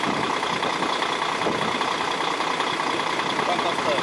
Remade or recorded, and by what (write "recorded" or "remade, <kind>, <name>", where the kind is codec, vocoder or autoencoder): recorded